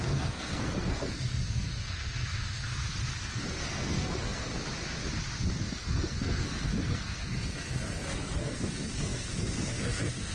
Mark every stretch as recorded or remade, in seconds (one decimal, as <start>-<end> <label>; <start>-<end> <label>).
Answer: 0.0-2.7 remade; 2.7-3.2 recorded; 3.2-4.5 remade; 4.5-5.5 recorded; 5.5-10.3 remade